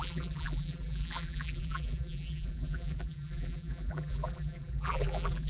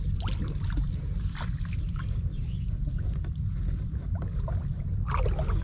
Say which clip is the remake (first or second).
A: first